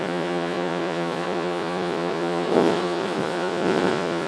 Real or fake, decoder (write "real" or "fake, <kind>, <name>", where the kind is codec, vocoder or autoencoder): fake, vocoder, Vocos